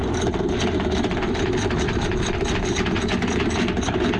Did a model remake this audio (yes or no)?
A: no